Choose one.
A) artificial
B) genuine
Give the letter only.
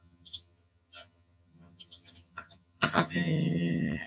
A